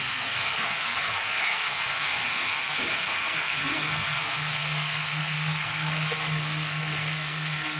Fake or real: fake